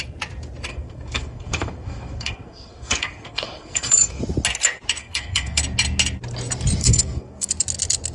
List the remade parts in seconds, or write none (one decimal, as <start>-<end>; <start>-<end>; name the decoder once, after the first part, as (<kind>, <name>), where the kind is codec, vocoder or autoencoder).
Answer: 0.7-4.2 (codec, SNAC); 5.0-5.6; 6.8-7.5